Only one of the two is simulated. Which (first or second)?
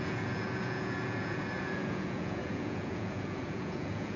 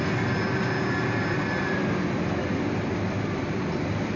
first